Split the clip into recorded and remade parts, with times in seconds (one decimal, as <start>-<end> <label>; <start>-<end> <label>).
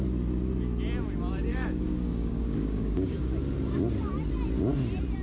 0.0-1.5 recorded; 1.5-3.4 remade; 3.4-5.2 recorded